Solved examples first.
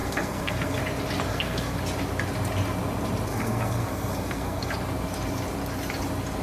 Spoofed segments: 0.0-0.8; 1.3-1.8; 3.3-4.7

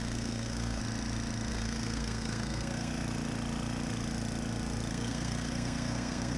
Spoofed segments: 0.0-0.8; 1.5-2.9; 4.9-6.4

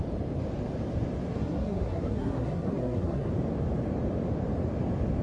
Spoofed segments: 1.3-3.3

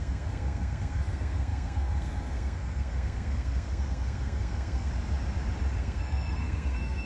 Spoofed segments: 0.0-4.9; 5.8-7.1

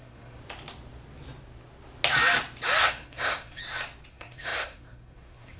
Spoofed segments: 0.0-0.4; 2.8-3.6; 4.1-5.6

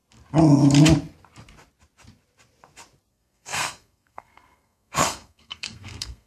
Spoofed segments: 3.1-6.3